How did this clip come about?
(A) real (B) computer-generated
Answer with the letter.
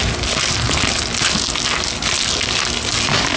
A